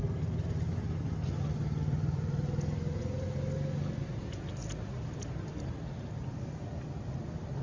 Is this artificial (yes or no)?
no